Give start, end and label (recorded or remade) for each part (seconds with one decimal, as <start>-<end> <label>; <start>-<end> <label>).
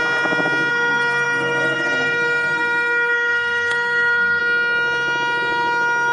0.0-0.7 recorded; 0.7-4.4 remade; 4.4-6.1 recorded